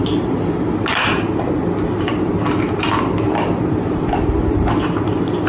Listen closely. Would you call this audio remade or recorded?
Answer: recorded